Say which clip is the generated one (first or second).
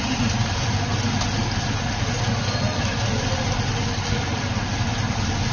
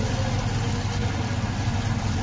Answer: first